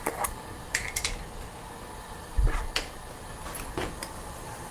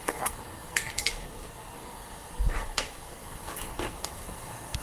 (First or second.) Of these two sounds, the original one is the first